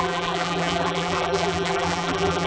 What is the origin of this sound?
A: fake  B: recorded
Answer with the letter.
A